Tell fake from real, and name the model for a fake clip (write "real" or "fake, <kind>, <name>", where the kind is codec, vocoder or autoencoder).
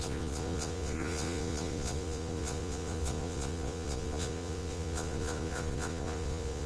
fake, vocoder, Vocos